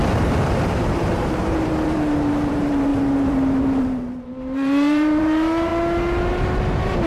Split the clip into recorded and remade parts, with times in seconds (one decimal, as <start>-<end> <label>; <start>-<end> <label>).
0.0-5.7 remade; 5.7-6.3 recorded; 6.3-7.1 remade